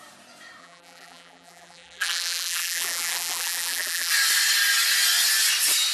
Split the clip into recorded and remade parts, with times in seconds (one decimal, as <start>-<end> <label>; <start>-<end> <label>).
0.0-0.6 recorded; 0.6-4.1 remade; 4.1-5.9 recorded